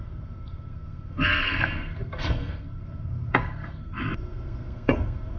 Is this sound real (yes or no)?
no